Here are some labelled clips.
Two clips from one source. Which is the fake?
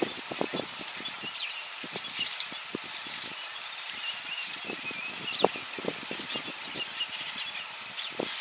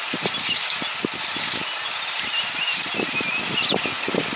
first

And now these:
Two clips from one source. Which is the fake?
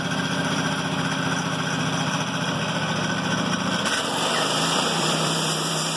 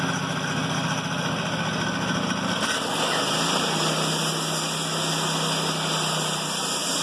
first